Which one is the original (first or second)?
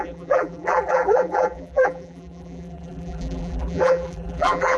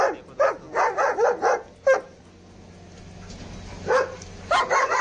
second